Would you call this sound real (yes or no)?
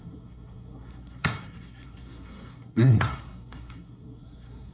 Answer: no